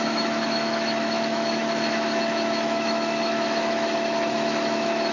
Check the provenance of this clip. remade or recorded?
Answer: remade